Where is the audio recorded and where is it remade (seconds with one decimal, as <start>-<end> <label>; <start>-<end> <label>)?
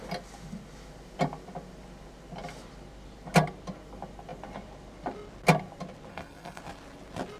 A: 0.0-6.1 recorded; 6.1-6.6 remade; 6.6-7.4 recorded